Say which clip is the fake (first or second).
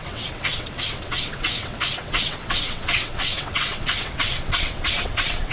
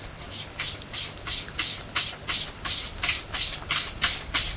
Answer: first